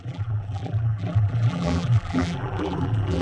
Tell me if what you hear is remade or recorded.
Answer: remade